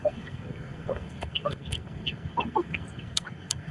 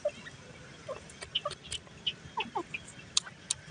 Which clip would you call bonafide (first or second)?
second